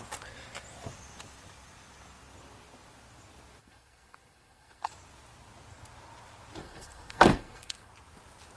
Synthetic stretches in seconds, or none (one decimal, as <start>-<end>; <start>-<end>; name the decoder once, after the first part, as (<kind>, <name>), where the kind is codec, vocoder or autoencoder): 3.6-4.9 (codec, SNAC); 6.6-7.9